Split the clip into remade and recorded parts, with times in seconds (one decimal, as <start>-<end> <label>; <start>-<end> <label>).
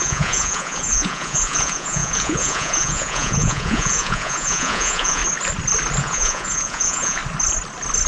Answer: 0.0-5.2 remade; 5.2-6.0 recorded; 6.0-7.2 remade; 7.2-8.1 recorded